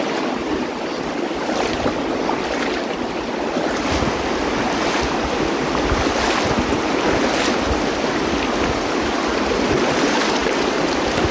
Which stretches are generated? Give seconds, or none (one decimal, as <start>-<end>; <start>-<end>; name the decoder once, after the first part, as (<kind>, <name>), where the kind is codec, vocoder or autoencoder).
none